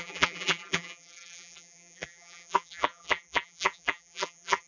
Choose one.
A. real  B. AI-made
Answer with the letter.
B